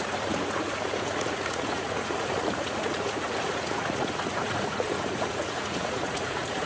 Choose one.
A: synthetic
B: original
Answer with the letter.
A